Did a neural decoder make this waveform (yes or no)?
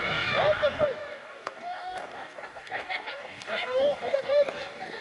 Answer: yes